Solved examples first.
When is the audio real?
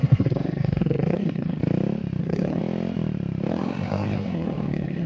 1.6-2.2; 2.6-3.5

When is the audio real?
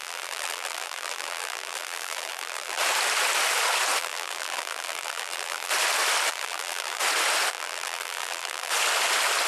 2.8-4.0; 5.7-6.3; 7.0-7.5; 8.7-9.5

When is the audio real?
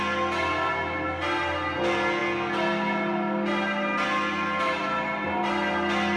0.0-6.2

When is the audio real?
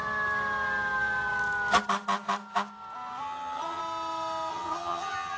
0.0-3.2; 3.8-4.5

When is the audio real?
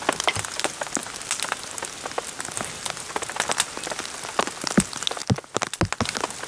0.0-6.5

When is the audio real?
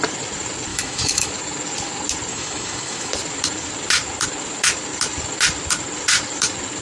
0.0-0.7; 1.3-2.3; 3.1-6.8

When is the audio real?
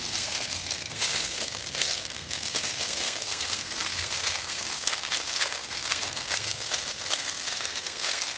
none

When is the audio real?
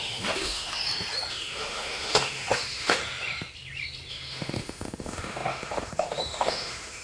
0.8-1.3; 3.0-4.1